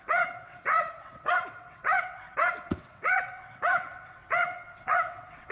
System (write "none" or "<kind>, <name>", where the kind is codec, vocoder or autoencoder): vocoder, WaveNeXt